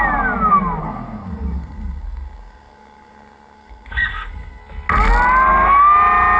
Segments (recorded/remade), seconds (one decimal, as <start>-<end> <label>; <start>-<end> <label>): 0.0-0.8 recorded; 0.8-4.6 remade; 4.6-6.4 recorded